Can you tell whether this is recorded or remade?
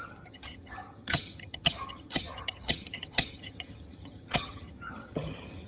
remade